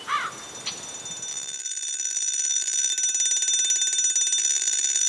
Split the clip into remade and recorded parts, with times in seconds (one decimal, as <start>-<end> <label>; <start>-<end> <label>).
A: 0.0-1.3 recorded; 1.3-2.9 remade; 2.9-4.4 recorded; 4.4-5.1 remade